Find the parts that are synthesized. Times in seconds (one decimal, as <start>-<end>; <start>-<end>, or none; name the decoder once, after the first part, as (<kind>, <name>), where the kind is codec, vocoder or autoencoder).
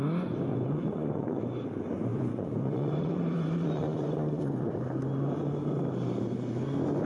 0.5-1.4 (vocoder, Vocos); 2.1-4.7